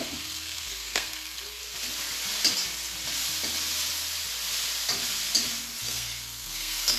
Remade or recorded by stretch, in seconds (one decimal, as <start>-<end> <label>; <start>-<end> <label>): 0.0-1.6 remade; 1.6-5.8 recorded; 5.8-7.0 remade